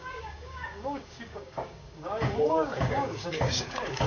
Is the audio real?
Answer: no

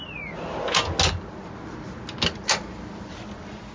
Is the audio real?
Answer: yes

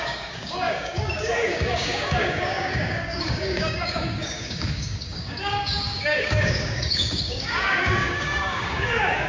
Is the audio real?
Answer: no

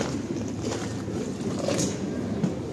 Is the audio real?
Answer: yes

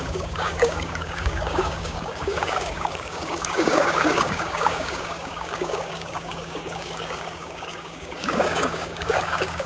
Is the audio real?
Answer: no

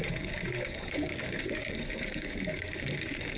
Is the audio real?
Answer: no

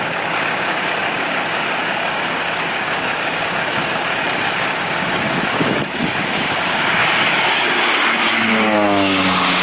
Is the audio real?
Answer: no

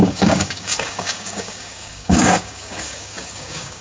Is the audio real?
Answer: no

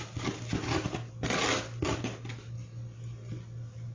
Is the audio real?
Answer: yes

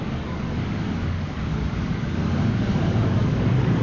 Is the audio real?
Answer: no